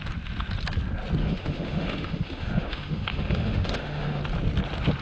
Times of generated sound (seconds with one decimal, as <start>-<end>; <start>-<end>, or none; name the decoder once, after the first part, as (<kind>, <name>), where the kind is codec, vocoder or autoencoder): 1.2-4.2 (autoencoder, DAC-VAE)